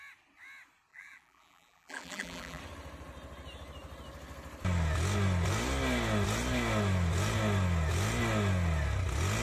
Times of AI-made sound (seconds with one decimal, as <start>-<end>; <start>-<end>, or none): 0.9-2.6

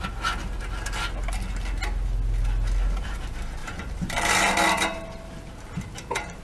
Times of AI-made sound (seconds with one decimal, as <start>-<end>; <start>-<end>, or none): 3.6-5.5

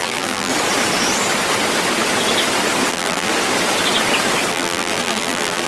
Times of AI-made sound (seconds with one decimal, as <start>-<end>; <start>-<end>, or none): 0.0-0.5; 2.9-3.3; 4.5-5.7

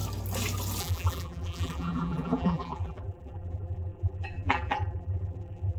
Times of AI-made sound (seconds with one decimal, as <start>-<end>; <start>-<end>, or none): 0.8-5.8

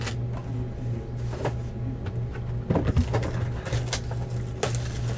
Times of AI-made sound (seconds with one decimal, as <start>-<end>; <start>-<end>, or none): none

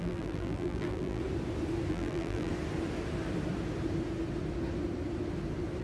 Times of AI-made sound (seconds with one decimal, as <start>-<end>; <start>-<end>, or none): 0.0-1.2; 1.9-2.5

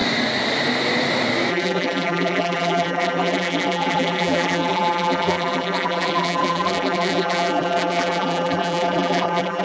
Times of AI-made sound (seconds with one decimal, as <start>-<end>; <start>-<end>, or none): 1.5-9.6

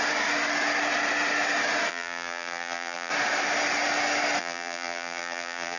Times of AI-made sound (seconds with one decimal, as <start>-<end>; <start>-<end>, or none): 1.9-3.1; 4.4-5.8